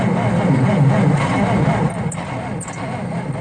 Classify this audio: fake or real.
real